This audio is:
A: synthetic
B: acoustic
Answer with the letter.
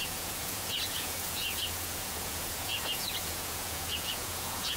A